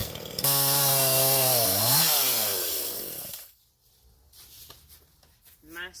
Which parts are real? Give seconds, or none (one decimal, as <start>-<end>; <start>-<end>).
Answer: 3.6-6.0